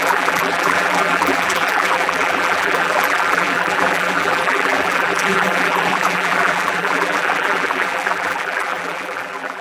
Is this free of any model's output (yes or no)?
no